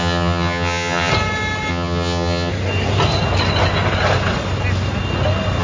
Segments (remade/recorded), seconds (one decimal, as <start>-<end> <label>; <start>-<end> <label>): 0.0-1.1 remade; 1.1-1.7 recorded; 1.7-2.5 remade; 2.5-5.6 recorded